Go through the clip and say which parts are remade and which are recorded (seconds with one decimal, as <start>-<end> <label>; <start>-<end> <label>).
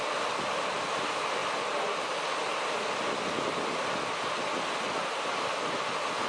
0.0-6.3 recorded